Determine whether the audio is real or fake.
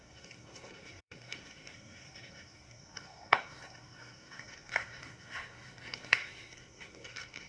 fake